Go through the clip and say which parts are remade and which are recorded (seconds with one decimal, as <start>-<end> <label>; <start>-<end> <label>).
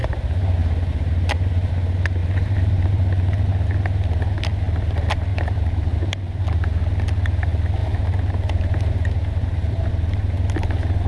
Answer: 0.0-1.7 remade; 1.7-2.2 recorded; 2.2-3.0 remade; 3.0-5.3 recorded; 5.3-6.4 remade; 6.4-7.8 recorded; 7.8-9.9 remade; 9.9-11.1 recorded